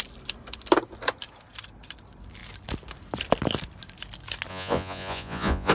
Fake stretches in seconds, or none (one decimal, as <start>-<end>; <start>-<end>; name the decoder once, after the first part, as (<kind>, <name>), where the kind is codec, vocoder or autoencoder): 4.5-5.7 (vocoder, Vocos)